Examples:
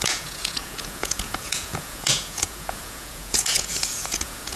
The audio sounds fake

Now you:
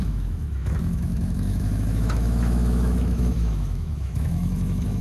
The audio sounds fake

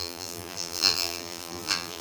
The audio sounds fake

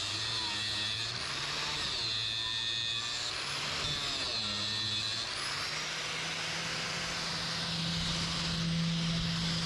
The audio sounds real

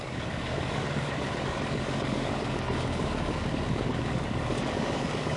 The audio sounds fake